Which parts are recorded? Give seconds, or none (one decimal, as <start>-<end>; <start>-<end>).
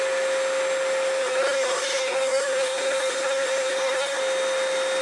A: 0.0-1.2; 4.2-5.0